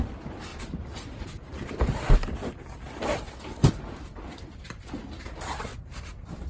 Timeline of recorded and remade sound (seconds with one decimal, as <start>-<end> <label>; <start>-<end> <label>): 0.0-6.5 recorded